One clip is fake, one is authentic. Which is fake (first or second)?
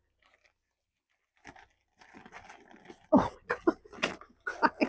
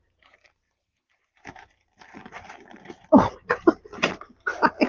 second